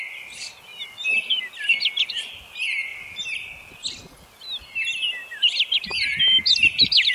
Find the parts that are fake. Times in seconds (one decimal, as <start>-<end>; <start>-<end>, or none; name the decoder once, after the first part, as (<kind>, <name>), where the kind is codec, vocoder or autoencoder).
none